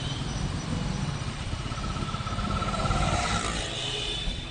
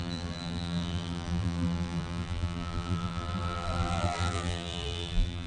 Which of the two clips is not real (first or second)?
second